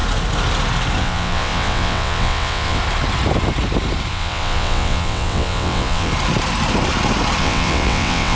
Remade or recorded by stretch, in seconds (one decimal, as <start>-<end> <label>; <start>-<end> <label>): 0.0-1.0 recorded; 1.0-2.8 remade; 2.8-4.1 recorded; 4.1-6.1 remade; 6.1-7.4 recorded; 7.4-8.4 remade